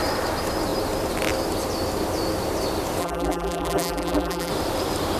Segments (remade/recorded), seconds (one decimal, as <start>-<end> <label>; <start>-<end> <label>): 0.0-3.0 recorded; 3.0-4.5 remade; 4.5-5.2 recorded